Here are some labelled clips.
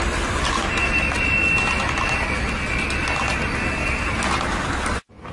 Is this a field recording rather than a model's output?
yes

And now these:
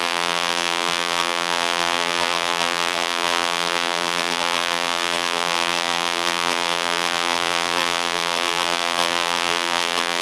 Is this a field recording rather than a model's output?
no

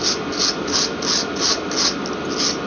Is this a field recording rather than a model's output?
yes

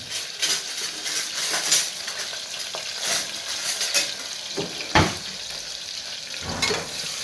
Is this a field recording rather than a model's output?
no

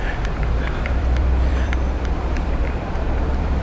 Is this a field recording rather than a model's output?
no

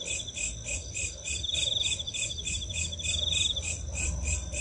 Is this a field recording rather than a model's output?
no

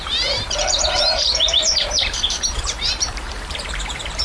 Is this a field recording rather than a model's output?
no